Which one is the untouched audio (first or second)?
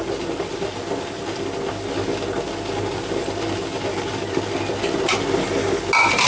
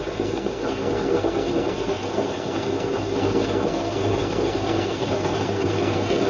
first